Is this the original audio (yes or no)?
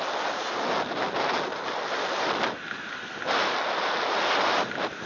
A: yes